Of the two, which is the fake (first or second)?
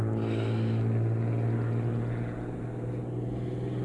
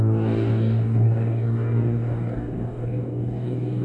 second